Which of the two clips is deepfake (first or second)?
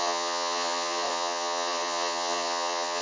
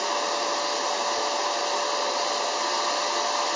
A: first